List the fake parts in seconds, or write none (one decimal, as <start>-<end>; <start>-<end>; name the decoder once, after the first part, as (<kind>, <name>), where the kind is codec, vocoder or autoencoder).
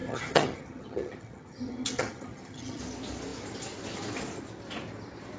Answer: 0.0-2.8 (vocoder, HiFi-GAN)